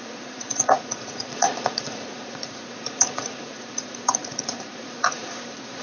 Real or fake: fake